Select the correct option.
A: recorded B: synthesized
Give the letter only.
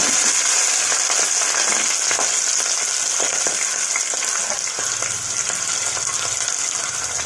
A